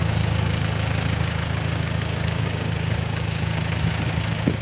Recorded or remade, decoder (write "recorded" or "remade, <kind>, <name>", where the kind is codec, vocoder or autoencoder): remade, codec, DAC